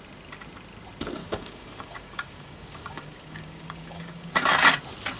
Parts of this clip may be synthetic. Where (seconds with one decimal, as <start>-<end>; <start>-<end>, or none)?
1.2-4.3